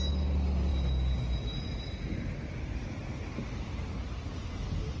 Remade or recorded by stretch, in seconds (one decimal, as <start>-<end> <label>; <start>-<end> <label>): 0.0-5.0 recorded